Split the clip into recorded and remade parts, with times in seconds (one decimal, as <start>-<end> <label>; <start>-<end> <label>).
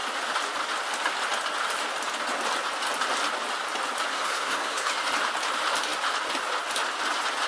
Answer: 0.0-4.1 recorded; 4.1-4.9 remade; 4.9-7.5 recorded